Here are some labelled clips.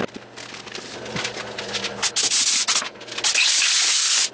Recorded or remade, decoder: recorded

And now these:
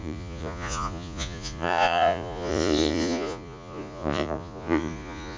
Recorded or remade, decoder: remade, vocoder, Vocos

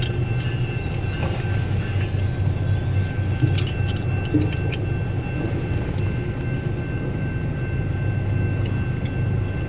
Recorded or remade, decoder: recorded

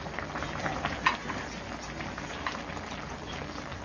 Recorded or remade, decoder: recorded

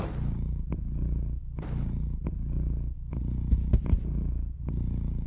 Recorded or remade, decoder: recorded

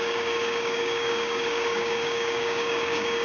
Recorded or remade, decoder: remade, codec, DAC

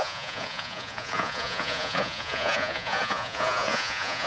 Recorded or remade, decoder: remade, vocoder, Vocos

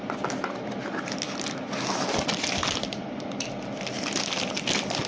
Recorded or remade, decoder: recorded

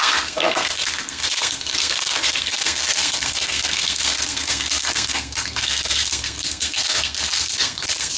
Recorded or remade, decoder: remade, codec, SNAC